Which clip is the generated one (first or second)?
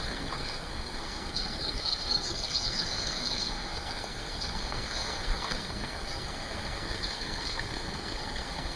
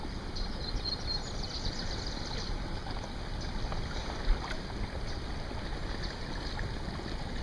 first